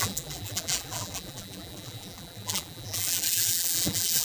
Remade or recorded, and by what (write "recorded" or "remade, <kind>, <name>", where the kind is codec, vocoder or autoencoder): remade, vocoder, BigVGAN v2